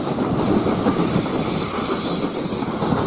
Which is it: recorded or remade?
remade